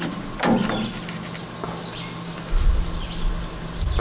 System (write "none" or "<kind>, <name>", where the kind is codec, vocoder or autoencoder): none